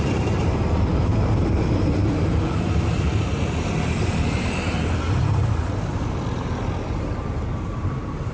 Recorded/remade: remade